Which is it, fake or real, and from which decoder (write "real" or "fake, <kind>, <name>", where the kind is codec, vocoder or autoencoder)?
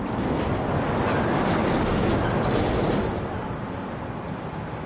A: real